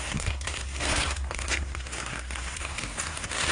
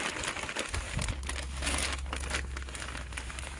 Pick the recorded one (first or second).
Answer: second